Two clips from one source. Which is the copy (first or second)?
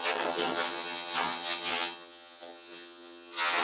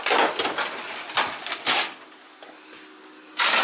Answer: first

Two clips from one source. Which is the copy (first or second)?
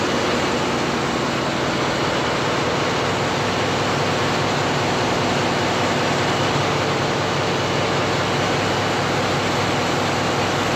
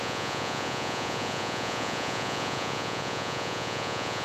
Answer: second